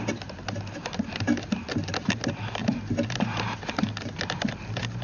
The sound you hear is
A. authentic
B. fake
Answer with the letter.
A